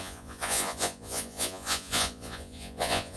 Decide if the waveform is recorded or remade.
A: remade